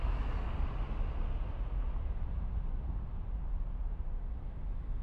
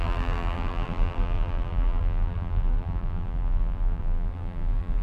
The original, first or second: first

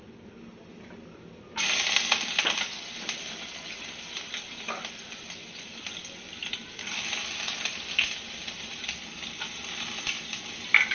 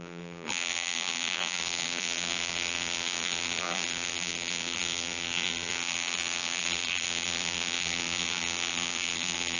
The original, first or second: first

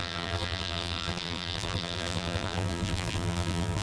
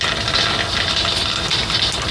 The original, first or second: second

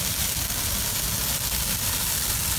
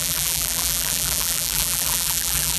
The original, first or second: first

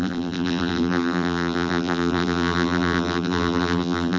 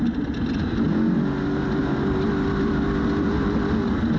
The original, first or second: second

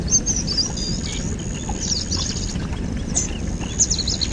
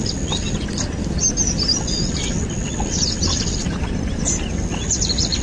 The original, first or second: first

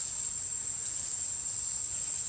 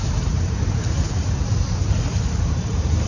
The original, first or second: first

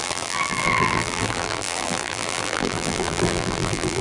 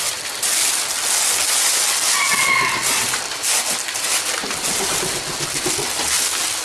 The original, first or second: second